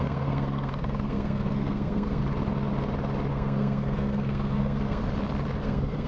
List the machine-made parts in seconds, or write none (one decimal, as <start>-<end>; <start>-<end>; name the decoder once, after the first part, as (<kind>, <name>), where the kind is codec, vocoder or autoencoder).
0.0-2.2 (codec, SNAC); 3.3-5.0; 5.6-6.1